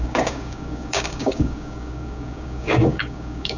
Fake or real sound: fake